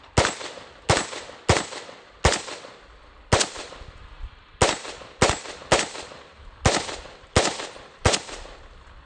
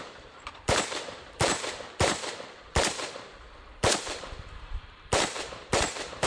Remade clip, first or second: second